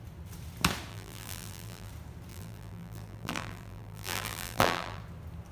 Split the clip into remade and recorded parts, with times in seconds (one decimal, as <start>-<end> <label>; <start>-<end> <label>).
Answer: 0.0-0.9 recorded; 0.9-1.9 remade; 1.9-2.3 recorded; 2.3-5.0 remade; 5.0-5.5 recorded